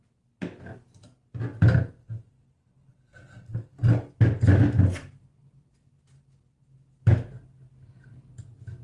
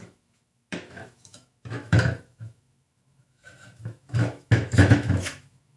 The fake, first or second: second